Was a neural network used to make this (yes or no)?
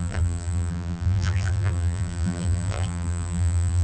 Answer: yes